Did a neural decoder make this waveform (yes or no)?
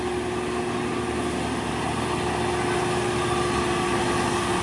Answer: no